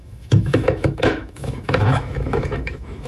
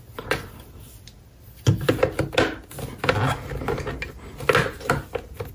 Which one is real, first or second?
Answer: second